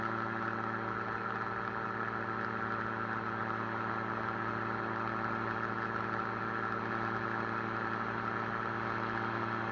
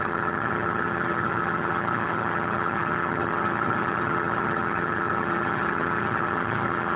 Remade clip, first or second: second